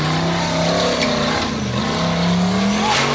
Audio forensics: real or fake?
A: real